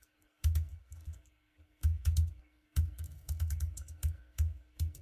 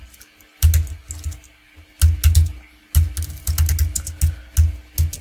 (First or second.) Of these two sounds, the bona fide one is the second